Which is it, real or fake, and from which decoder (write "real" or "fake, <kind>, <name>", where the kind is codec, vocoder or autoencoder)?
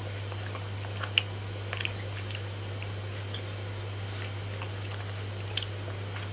real